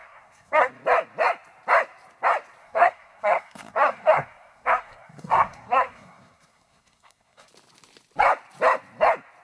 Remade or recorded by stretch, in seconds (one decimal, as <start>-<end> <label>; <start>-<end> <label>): 0.0-0.7 remade; 0.7-2.6 recorded; 2.6-7.5 remade; 7.5-9.4 recorded